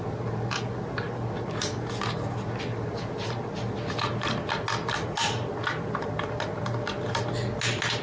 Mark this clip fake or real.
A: real